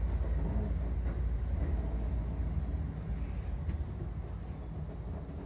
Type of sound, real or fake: real